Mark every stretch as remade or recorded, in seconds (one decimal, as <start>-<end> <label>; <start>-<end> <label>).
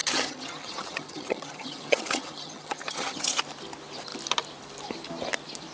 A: 0.0-3.4 remade; 3.4-5.7 recorded